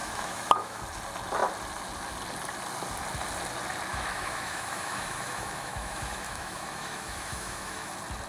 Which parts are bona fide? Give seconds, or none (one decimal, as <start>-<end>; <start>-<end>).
0.8-3.9; 7.9-8.3